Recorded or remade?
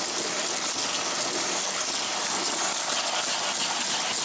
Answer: recorded